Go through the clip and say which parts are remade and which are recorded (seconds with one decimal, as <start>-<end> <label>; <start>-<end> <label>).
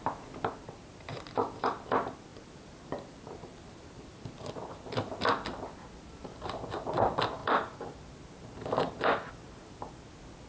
0.0-2.3 recorded; 2.3-4.5 remade; 4.5-7.4 recorded; 7.4-8.1 remade; 8.1-10.5 recorded